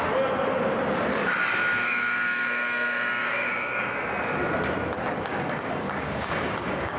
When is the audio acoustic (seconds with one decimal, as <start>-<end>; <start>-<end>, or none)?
0.0-1.6; 3.9-5.3